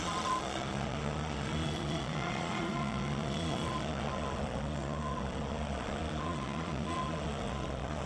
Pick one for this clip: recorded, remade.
remade